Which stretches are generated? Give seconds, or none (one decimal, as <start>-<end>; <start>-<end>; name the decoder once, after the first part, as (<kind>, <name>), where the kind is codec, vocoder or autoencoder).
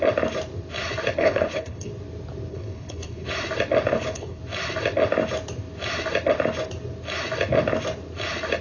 1.2-1.9 (codec, HILCodec); 2.5-3.3; 3.9-4.4